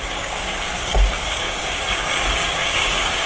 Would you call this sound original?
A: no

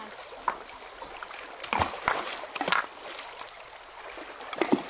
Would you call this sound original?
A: yes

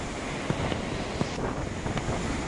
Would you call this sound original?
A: yes